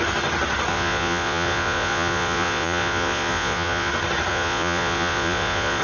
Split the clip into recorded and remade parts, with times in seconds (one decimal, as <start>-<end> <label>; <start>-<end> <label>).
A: 0.0-0.7 recorded; 0.7-3.9 remade; 3.9-4.3 recorded; 4.3-5.8 remade